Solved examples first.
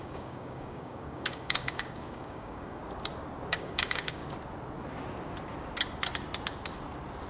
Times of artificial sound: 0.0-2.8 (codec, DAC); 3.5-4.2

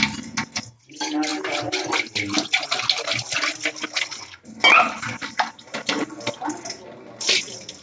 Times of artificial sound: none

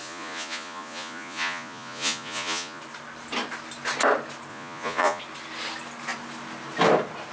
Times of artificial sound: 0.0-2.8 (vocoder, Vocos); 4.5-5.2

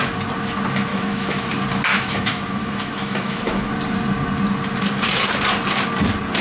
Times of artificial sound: 0.9-1.5 (autoencoder, DAC-VAE); 1.9-3.7

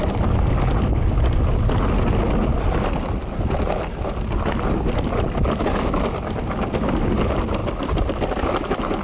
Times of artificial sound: none

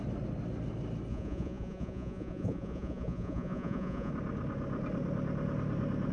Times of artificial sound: 1.1-4.1 (vocoder, Vocos)